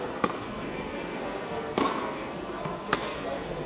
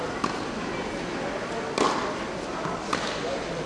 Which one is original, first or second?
second